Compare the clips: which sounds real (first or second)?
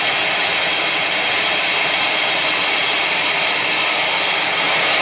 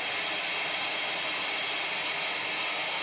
second